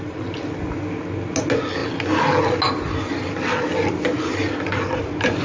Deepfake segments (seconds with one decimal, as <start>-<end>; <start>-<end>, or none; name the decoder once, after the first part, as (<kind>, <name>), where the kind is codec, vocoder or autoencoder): none